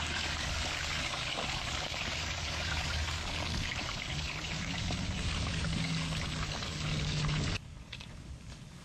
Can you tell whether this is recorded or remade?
remade